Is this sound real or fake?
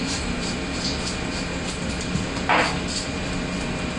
real